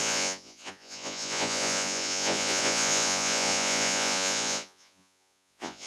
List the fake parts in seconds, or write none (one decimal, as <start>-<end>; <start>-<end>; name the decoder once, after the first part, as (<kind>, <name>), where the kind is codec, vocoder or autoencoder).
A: 0.0-5.9 (vocoder, Vocos)